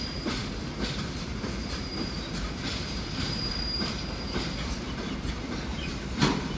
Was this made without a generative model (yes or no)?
no